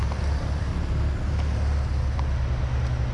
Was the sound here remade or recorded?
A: recorded